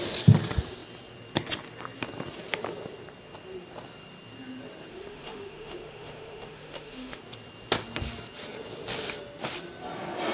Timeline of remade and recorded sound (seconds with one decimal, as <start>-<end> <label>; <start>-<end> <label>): 0.0-4.9 recorded; 4.9-7.2 remade; 7.2-10.3 recorded